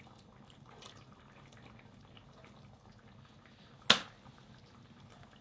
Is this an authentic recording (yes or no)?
yes